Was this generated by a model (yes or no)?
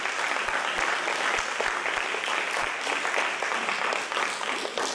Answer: no